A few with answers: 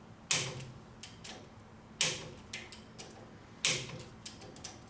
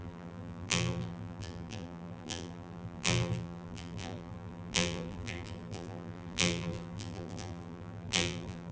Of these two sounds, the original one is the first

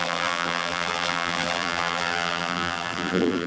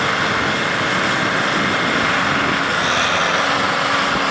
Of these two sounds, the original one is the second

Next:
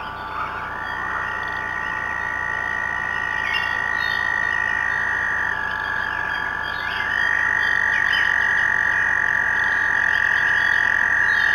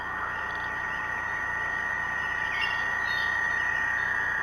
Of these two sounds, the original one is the first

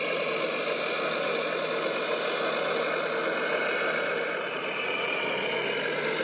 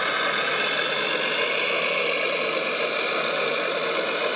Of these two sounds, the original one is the first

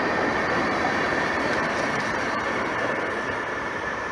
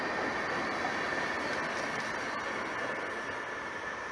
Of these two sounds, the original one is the second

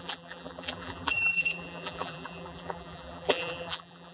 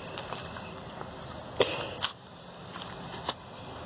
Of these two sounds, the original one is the second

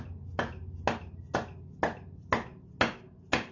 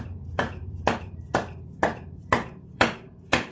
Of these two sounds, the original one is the first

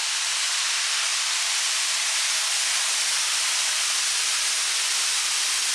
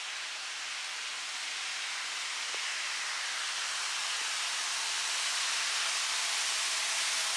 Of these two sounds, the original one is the second